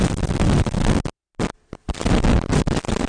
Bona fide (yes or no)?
yes